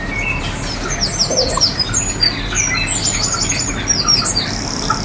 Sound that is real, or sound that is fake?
real